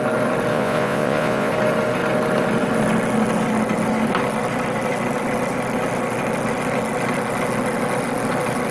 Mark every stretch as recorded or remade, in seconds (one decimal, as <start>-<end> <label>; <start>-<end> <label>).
0.0-0.5 recorded; 0.5-1.5 remade; 1.5-8.7 recorded